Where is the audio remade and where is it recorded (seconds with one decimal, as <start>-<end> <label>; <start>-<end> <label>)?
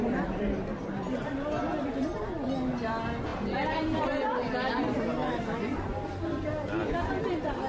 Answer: 0.0-7.7 recorded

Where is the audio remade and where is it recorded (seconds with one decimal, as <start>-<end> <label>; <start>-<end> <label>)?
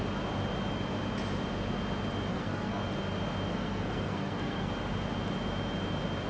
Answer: 0.0-2.3 recorded; 2.3-2.8 remade; 2.8-3.5 recorded; 3.5-4.7 remade; 4.7-6.3 recorded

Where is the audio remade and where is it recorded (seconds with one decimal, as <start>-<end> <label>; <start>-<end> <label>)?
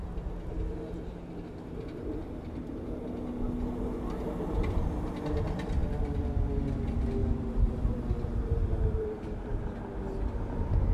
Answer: 0.0-7.2 recorded; 7.2-9.7 remade; 9.7-10.9 recorded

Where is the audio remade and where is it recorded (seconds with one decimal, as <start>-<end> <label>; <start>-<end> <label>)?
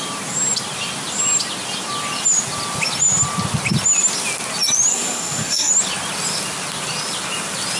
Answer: 0.0-4.9 recorded; 4.9-5.7 remade; 5.7-7.8 recorded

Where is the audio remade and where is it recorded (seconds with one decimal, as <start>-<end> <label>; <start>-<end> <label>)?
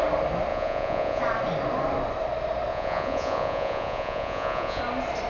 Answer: 0.0-0.5 recorded; 0.5-1.2 remade; 1.2-2.7 recorded; 2.7-4.8 remade; 4.8-5.3 recorded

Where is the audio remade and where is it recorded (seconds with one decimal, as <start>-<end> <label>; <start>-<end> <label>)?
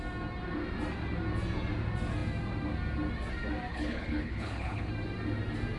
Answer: 0.0-3.7 recorded; 3.7-4.9 remade; 4.9-5.8 recorded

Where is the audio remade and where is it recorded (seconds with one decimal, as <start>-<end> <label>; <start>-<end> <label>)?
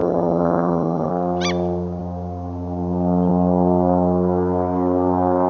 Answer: 0.0-1.1 remade; 1.1-5.5 recorded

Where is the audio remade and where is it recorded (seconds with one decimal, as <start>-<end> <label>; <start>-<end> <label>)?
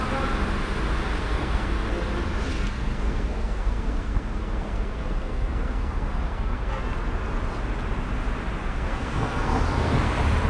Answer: 0.0-1.2 recorded; 1.2-2.0 remade; 2.0-2.5 recorded; 2.5-6.8 remade; 6.8-8.6 recorded; 8.6-10.1 remade; 10.1-10.5 recorded